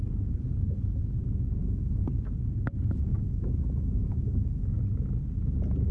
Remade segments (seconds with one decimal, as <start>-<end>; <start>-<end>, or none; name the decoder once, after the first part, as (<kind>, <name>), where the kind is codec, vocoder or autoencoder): 1.6-2.1 (autoencoder, DAC-VAE); 3.1-4.8